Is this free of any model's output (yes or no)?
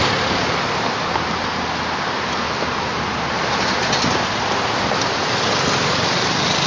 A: yes